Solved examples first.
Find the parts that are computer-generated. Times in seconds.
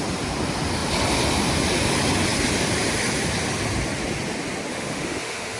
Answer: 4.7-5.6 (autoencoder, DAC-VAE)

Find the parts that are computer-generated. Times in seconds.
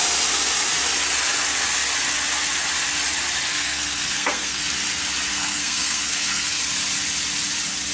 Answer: 3.5-4.6 (codec, SNAC); 5.3-6.6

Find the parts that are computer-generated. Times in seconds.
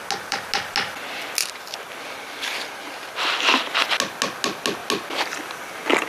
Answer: 1.4-3.7 (vocoder, BigVGAN v2)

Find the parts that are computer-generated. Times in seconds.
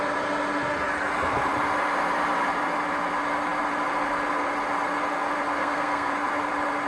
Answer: 5.6-6.1 (codec, SNAC)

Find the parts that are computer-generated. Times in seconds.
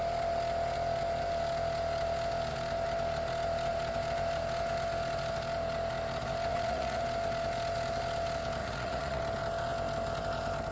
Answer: 6.5-7.0 (vocoder, Vocos); 8.6-9.2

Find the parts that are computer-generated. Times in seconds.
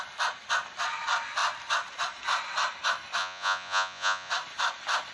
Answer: 3.2-4.3 (vocoder, Vocos)